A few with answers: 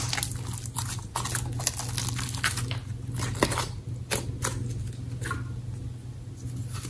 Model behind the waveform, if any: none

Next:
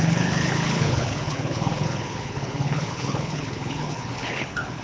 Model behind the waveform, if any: codec, HILCodec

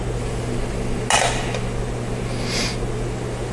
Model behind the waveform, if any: none